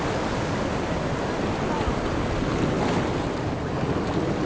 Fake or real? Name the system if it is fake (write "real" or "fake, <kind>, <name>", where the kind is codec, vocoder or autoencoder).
real